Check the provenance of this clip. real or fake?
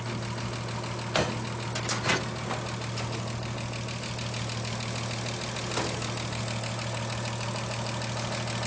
real